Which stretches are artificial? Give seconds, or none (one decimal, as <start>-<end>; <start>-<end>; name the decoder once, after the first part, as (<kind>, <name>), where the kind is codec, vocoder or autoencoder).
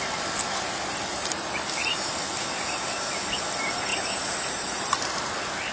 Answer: 1.1-2.1 (vocoder, BigVGAN v2); 3.9-4.9